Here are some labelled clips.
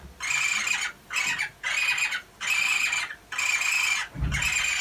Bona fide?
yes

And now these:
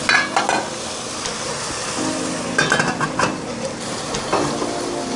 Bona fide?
yes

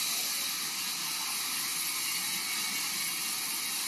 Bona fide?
yes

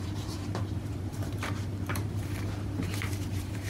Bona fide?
no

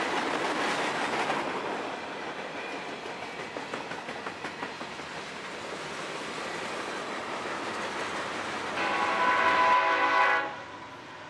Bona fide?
yes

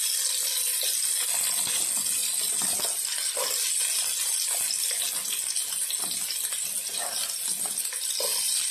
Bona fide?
yes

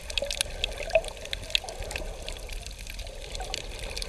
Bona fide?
yes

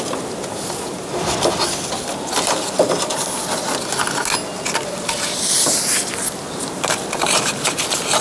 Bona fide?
yes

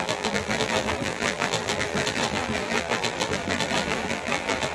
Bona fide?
no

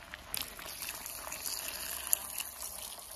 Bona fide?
yes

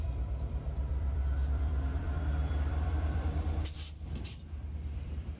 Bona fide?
no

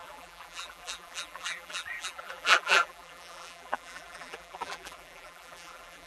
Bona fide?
no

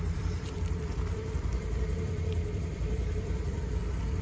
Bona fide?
no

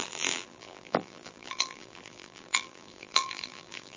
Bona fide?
no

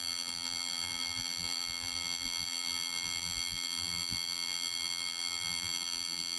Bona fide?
no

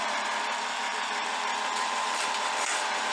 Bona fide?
no